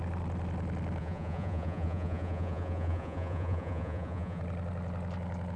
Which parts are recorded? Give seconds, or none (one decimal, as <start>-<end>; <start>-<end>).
0.0-1.0; 4.4-5.6